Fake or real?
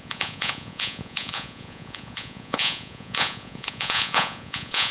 fake